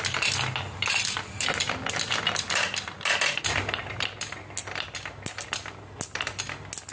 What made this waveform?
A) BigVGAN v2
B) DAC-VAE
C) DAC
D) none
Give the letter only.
D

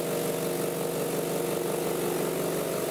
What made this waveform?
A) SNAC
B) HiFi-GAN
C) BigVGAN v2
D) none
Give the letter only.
D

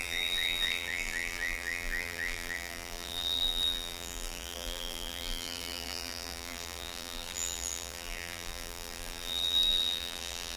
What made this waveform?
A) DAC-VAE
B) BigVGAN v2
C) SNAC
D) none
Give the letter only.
B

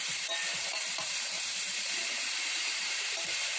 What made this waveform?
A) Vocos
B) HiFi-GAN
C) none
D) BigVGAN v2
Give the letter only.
D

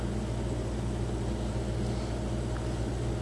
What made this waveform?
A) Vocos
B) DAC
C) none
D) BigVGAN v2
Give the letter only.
C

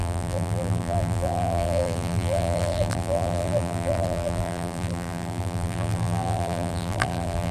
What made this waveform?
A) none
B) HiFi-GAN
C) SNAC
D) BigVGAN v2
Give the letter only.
D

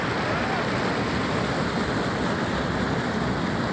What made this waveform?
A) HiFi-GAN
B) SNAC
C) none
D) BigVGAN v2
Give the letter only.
C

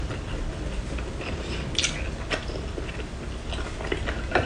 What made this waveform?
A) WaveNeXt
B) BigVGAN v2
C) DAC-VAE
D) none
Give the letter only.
D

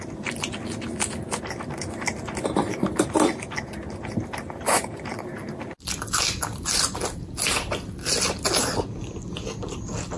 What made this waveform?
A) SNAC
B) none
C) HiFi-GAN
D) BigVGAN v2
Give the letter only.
B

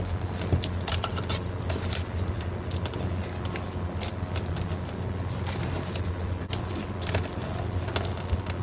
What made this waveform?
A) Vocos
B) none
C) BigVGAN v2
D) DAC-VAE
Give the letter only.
B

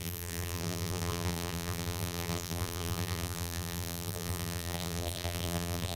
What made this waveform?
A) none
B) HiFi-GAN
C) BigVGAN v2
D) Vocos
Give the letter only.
C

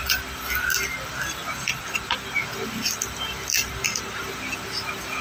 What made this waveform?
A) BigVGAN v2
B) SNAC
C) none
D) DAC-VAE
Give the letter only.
C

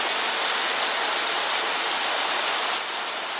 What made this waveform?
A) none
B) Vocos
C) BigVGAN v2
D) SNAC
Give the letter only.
A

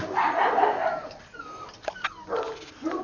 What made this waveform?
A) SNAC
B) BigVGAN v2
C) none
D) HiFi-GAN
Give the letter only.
B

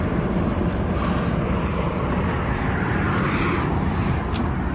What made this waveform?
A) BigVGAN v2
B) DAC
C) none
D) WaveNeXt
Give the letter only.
C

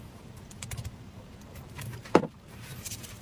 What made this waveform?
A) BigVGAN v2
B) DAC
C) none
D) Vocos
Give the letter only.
A